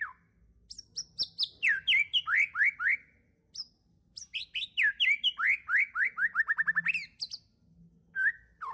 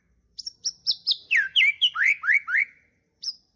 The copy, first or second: second